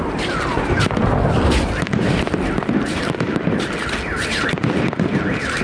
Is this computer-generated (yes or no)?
no